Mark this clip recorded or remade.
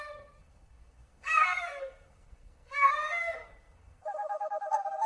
remade